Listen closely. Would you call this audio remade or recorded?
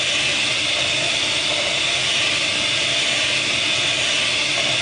recorded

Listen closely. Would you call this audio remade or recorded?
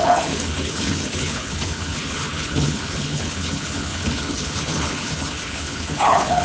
remade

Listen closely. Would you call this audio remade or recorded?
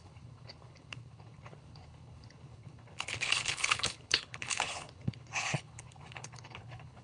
remade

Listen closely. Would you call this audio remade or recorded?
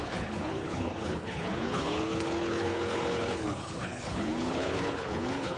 remade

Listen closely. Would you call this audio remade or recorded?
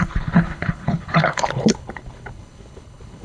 remade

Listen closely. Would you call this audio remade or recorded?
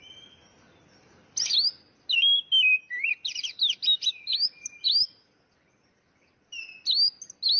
recorded